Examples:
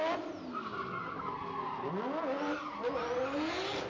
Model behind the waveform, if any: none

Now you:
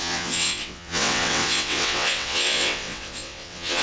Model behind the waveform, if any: vocoder, WaveNeXt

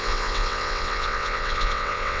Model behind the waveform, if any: vocoder, WaveNeXt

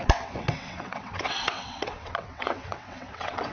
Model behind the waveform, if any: vocoder, WaveNeXt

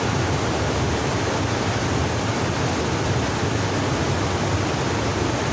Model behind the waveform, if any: none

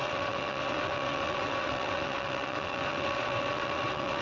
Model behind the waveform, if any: vocoder, WaveNeXt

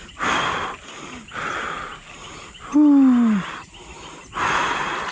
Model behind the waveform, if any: none